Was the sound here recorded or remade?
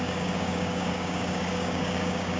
remade